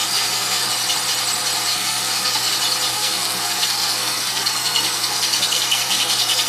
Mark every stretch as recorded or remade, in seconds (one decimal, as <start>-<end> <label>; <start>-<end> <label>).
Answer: 0.0-0.7 remade; 0.7-1.7 recorded; 1.7-2.5 remade; 2.5-2.9 recorded; 2.9-6.5 remade